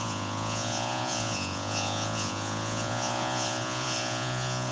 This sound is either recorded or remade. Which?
remade